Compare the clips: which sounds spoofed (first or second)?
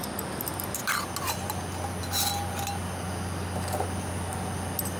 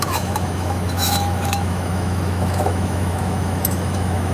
second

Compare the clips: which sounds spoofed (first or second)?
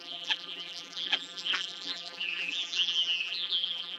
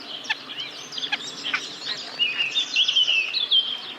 first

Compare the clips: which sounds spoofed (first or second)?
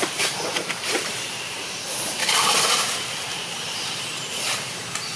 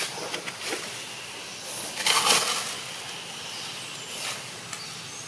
first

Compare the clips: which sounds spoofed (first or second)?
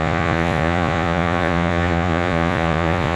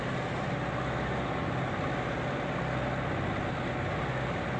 first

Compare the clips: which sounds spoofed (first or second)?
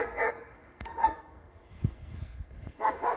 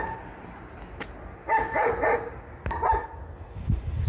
first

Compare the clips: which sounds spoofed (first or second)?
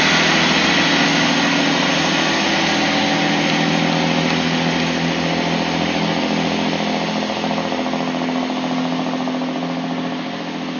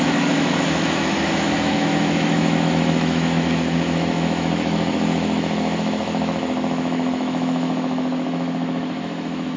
second